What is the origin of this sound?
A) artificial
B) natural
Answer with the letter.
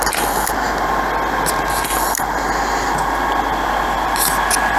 B